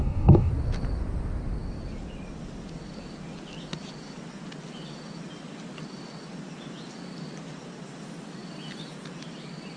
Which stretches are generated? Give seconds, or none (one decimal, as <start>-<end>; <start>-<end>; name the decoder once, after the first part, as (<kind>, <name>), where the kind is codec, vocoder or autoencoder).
0.0-0.5 (codec, DAC)